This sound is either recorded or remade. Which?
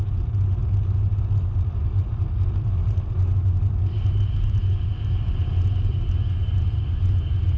recorded